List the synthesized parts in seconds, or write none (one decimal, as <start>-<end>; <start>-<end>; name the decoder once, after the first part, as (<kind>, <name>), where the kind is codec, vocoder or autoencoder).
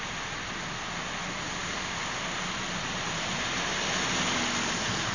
none